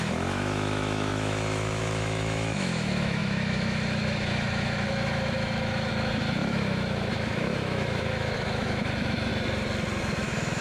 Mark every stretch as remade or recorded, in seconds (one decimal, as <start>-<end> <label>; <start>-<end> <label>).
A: 0.0-9.3 remade; 9.3-10.0 recorded; 10.0-10.6 remade